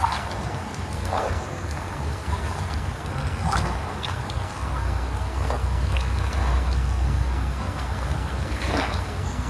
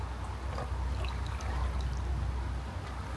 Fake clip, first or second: first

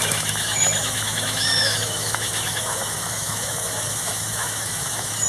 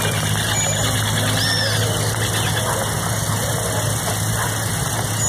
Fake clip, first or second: first